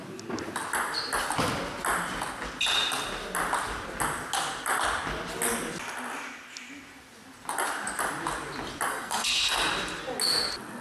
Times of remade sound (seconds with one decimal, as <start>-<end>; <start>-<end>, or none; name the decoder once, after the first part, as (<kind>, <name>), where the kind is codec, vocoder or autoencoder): 8.9-9.5 (codec, SNAC)